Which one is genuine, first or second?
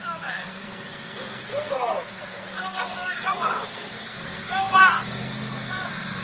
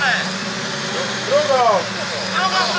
second